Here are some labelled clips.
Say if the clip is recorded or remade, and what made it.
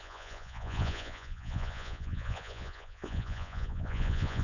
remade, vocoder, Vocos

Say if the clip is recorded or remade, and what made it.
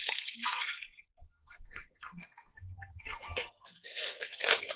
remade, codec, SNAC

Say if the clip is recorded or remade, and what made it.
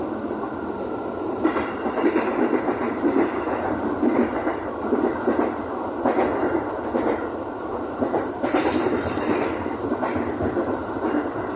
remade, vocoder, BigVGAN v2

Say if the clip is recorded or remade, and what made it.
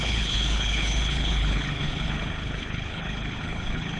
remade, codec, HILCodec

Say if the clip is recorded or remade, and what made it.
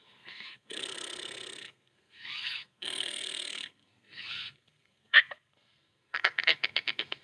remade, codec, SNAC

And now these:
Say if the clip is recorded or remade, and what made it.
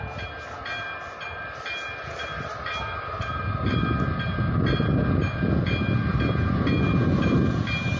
recorded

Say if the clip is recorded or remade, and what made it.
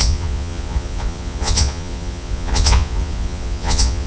remade, vocoder, Vocos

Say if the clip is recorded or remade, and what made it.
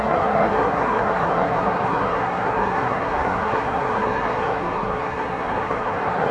remade, codec, SNAC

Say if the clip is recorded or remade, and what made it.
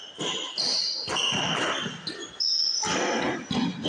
recorded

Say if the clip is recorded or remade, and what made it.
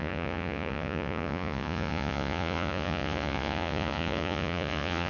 remade, vocoder, Vocos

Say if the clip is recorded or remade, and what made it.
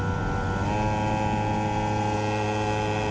recorded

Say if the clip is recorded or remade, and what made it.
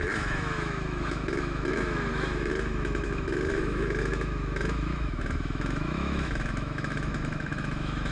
remade, autoencoder, DAC-VAE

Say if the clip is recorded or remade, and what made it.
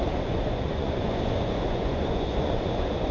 remade, vocoder, Vocos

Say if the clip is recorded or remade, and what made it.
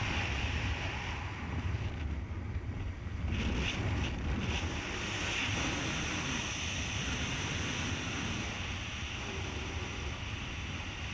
recorded